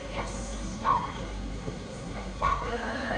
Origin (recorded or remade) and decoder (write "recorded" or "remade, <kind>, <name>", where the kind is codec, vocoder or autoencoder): remade, codec, SNAC